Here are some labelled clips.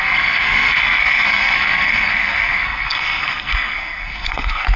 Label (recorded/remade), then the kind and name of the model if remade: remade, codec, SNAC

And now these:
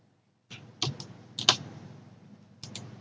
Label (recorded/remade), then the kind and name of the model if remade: recorded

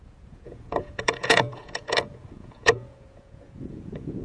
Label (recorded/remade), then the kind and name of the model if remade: remade, vocoder, Vocos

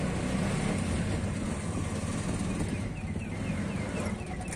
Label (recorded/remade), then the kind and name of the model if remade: recorded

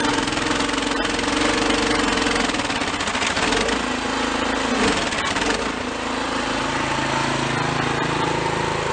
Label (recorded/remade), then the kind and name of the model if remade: recorded